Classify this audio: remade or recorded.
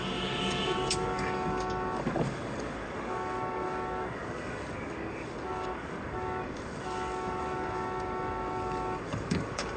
remade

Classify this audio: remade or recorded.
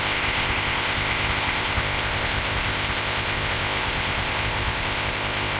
remade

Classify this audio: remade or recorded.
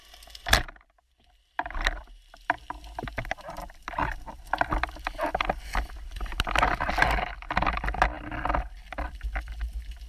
recorded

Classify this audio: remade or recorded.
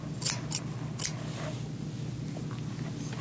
recorded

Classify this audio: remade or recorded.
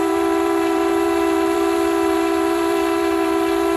remade